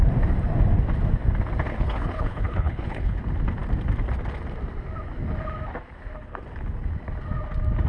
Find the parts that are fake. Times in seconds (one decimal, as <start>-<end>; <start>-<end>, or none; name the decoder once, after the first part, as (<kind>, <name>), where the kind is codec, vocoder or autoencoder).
1.7-3.2 (codec, HILCodec)

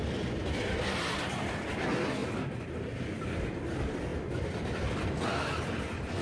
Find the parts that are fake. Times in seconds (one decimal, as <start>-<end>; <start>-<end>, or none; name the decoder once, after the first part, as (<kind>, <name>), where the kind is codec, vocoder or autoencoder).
2.2-3.0 (vocoder, BigVGAN v2)

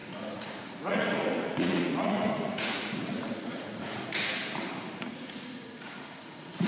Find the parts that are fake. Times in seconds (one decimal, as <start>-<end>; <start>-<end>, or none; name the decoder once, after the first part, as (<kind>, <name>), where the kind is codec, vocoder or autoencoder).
0.0-4.4 (vocoder, Vocos); 5.0-6.7

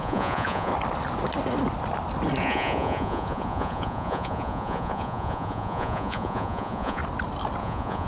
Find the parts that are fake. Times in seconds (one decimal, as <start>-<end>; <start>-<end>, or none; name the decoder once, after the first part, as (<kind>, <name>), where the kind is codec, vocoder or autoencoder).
0.0-0.7 (vocoder, Vocos); 2.4-7.0; 7.6-8.1

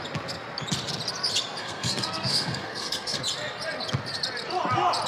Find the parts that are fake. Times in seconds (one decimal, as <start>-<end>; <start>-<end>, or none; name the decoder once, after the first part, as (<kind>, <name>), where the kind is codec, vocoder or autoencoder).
1.6-3.2 (codec, SNAC)

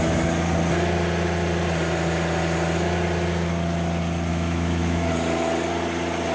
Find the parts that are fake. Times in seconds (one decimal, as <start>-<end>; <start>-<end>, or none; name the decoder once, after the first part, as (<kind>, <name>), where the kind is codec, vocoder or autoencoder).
4.3-5.1 (autoencoder, DAC-VAE)